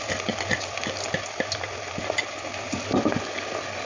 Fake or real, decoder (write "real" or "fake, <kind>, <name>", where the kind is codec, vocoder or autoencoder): real